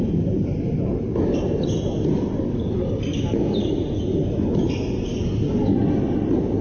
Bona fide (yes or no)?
yes